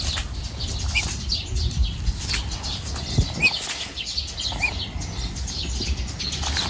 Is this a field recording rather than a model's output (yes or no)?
yes